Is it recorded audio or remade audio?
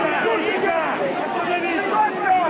recorded